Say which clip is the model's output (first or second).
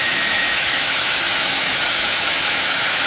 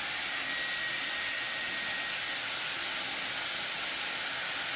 first